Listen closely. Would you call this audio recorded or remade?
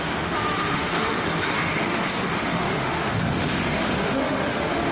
remade